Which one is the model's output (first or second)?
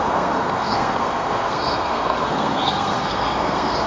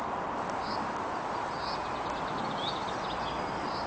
first